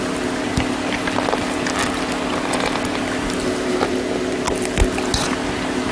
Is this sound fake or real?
real